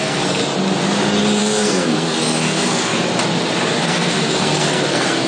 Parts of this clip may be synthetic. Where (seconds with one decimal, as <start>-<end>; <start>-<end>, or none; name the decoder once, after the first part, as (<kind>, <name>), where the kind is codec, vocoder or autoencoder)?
0.0-0.4 (codec, SNAC); 1.4-2.9; 3.8-5.3